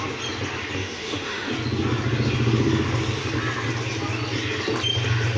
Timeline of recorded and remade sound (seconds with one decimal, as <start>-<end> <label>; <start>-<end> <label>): 0.0-0.8 recorded; 0.8-1.5 remade; 1.5-5.4 recorded